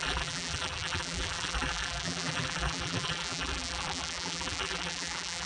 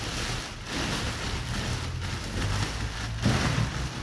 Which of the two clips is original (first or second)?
second